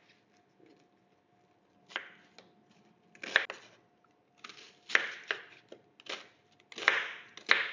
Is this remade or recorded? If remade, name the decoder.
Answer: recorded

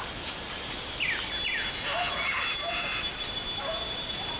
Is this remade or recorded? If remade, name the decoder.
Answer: recorded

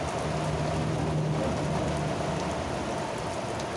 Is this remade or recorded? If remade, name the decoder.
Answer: recorded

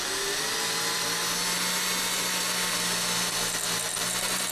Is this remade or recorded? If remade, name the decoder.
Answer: recorded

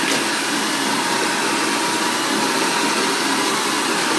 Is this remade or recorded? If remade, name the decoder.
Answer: recorded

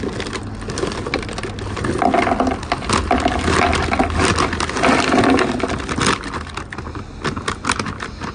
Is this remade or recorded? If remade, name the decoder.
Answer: recorded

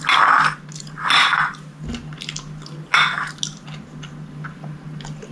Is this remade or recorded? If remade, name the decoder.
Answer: recorded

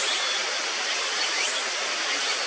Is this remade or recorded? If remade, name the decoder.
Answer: recorded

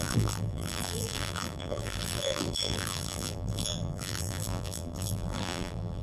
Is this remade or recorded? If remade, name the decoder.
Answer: remade, vocoder, BigVGAN v2